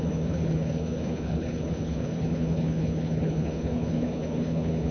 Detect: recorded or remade remade